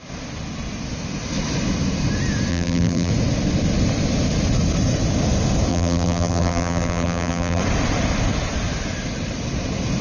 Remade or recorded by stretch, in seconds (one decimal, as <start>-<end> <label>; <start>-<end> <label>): 0.0-2.5 recorded; 2.5-3.1 remade; 3.1-5.7 recorded; 5.7-7.6 remade; 7.6-10.0 recorded